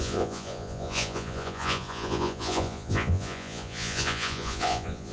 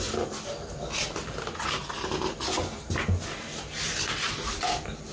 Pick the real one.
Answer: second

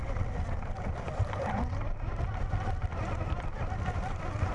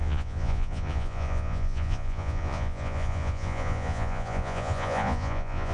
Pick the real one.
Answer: first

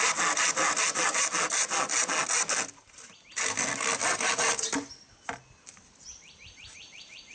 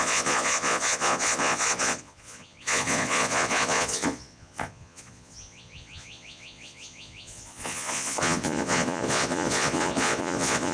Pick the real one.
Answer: first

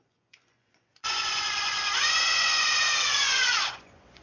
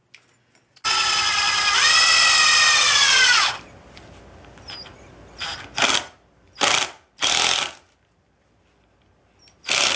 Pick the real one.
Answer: second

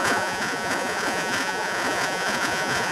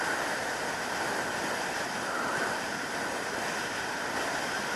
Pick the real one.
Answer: second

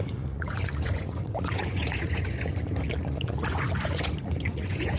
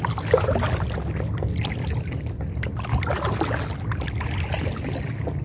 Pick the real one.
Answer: second